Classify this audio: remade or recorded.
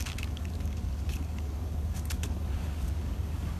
remade